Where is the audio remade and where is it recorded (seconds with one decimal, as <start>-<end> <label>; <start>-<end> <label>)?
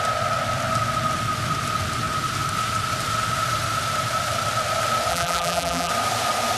0.0-5.1 recorded; 5.1-5.9 remade; 5.9-6.6 recorded